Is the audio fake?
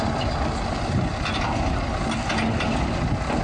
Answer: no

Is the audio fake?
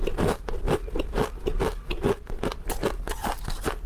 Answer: no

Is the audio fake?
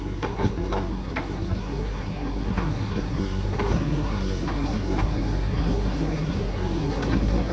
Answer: yes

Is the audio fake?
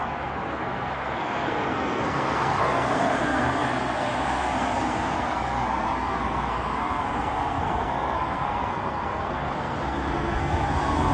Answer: yes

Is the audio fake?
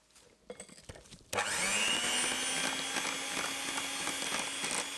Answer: no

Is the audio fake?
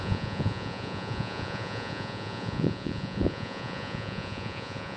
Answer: yes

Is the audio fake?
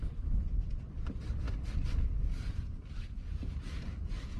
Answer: yes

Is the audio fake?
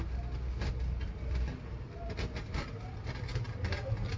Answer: no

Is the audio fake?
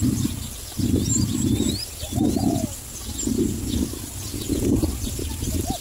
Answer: no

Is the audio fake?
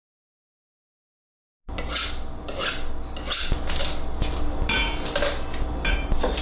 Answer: no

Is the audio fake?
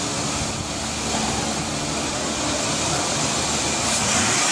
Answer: no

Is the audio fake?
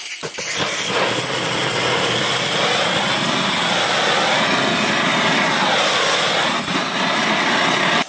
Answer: no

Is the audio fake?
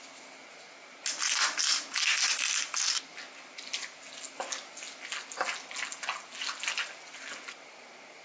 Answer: no